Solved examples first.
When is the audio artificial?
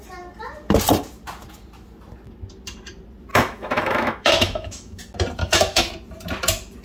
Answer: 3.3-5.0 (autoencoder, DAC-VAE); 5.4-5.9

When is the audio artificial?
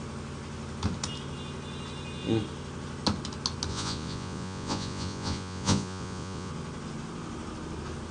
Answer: 3.7-6.5 (vocoder, Vocos)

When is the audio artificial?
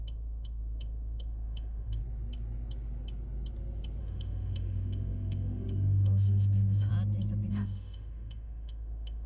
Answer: 0.0-2.0 (autoencoder, DAC-VAE); 4.0-6.9; 7.5-9.3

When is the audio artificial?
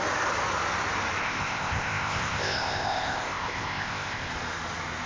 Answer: 1.2-4.3 (codec, ZipCodec)